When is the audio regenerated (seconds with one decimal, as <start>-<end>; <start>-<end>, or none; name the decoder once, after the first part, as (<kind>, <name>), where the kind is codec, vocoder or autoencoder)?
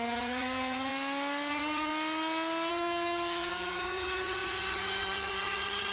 0.0-0.9 (vocoder, HiFi-GAN); 1.5-1.9; 2.7-5.9